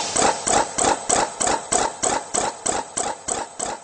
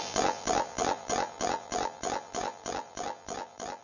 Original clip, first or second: first